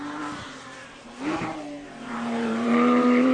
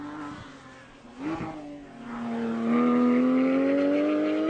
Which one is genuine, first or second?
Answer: second